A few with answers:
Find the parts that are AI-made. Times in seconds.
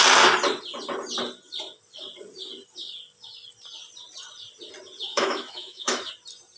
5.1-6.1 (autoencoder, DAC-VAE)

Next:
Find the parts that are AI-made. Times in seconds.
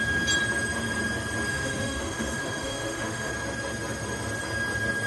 1.5-3.3 (autoencoder, DAC-VAE)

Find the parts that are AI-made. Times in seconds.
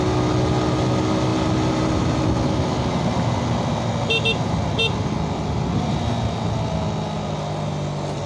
none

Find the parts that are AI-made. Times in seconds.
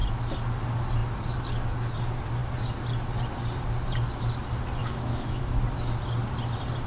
4.8-5.4 (autoencoder, DAC-VAE)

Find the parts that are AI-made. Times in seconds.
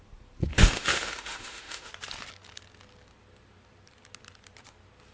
0.5-1.9 (autoencoder, DAC-VAE)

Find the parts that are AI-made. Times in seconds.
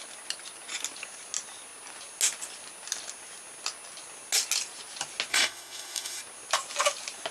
5.3-6.2 (autoencoder, DAC-VAE)